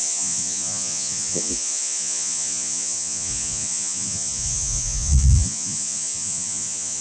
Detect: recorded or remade remade